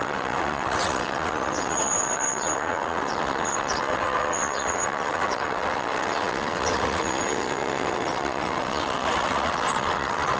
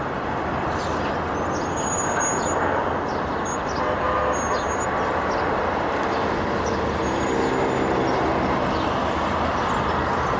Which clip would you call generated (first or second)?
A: first